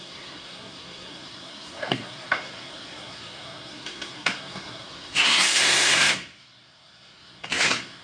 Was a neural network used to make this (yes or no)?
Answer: yes